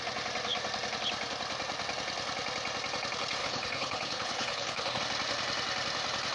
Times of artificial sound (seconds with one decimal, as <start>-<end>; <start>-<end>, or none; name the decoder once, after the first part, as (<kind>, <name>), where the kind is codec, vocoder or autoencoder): 3.4-5.0 (codec, HILCodec)